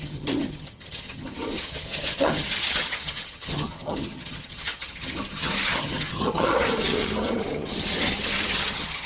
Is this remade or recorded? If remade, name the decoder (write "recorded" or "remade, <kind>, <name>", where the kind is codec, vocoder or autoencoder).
remade, vocoder, HiFi-GAN